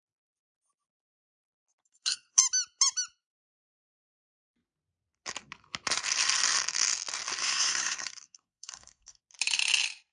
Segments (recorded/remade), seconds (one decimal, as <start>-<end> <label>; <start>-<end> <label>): 0.0-1.8 recorded; 1.8-2.4 remade; 2.4-7.4 recorded; 7.4-9.2 remade; 9.2-10.1 recorded